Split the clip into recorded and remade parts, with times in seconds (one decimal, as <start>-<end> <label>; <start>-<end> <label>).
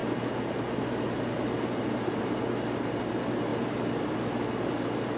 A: 0.0-5.2 recorded